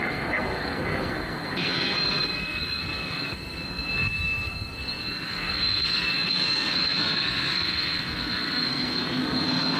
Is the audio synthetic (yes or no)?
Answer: yes